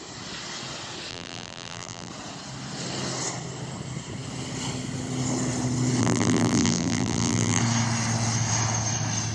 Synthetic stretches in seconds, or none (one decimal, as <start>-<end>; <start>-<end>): 1.1-2.1; 6.0-7.6